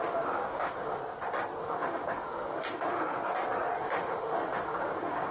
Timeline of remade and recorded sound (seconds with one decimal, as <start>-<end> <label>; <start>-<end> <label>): 0.0-1.0 remade; 1.0-1.6 recorded; 1.6-3.2 remade; 3.2-3.8 recorded; 3.8-5.3 remade